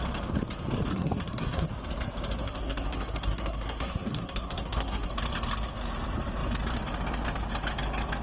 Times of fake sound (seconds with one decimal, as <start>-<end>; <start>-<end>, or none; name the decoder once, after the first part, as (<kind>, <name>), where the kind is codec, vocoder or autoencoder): 0.9-1.7 (codec, SNAC); 2.4-5.1